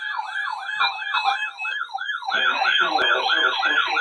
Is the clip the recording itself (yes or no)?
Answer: yes